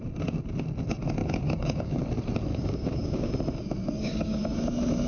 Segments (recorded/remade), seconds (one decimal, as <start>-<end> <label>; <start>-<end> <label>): 0.0-1.2 recorded; 1.2-2.0 remade; 2.0-2.5 recorded; 2.5-3.3 remade; 3.3-3.8 recorded; 3.8-4.4 remade; 4.4-5.1 recorded